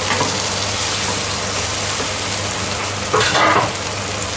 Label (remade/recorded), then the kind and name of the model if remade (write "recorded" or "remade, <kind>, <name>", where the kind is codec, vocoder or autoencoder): recorded